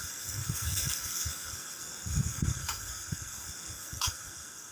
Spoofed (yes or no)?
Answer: yes